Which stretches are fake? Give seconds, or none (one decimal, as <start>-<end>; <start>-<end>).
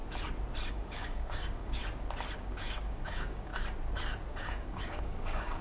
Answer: 0.7-1.8; 2.4-3.5; 4.3-5.6